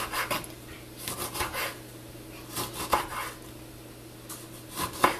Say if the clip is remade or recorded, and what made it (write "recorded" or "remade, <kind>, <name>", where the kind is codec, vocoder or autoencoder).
recorded